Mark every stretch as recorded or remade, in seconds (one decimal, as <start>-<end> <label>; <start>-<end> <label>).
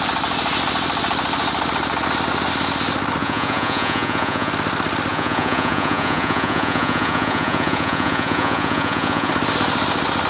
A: 0.0-3.2 recorded; 3.2-4.5 remade; 4.5-5.1 recorded; 5.1-9.3 remade; 9.3-10.3 recorded